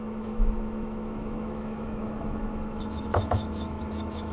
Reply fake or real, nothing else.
fake